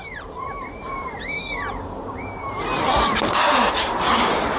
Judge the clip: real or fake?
fake